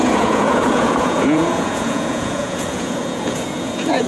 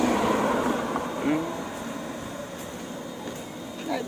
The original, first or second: second